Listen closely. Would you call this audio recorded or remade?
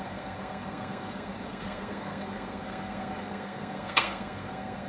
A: remade